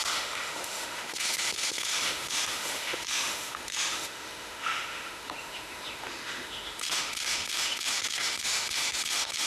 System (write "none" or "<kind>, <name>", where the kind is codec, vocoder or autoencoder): autoencoder, DAC-VAE